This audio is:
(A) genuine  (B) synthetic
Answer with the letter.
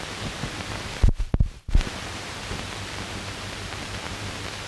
B